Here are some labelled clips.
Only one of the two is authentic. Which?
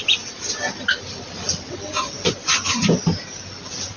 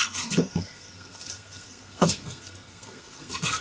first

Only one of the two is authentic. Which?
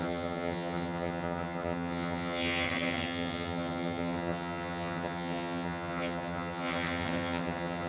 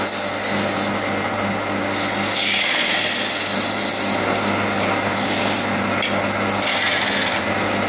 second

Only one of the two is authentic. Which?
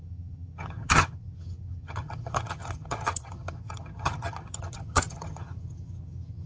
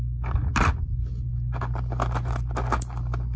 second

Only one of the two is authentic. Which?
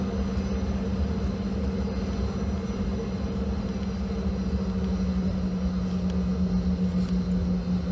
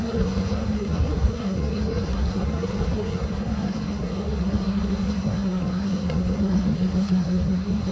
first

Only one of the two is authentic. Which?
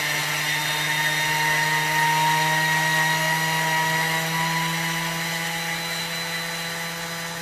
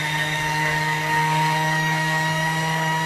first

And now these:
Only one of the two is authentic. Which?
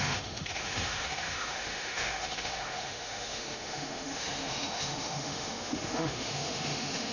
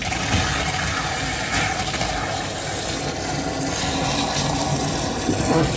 second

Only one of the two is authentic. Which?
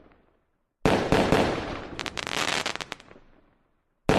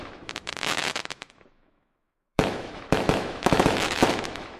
first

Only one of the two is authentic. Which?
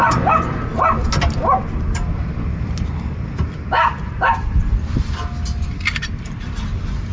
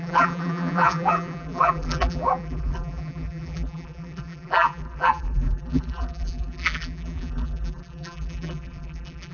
first